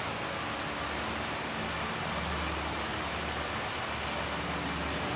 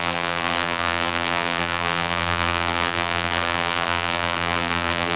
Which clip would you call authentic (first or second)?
first